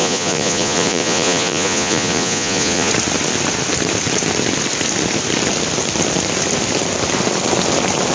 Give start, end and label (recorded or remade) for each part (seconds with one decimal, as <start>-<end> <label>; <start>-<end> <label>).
0.0-2.9 remade; 2.9-8.1 recorded